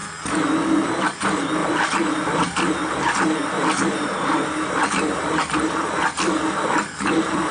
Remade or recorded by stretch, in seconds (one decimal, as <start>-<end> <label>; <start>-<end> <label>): 0.0-1.6 recorded; 1.6-2.9 remade; 2.9-3.4 recorded; 3.4-7.5 remade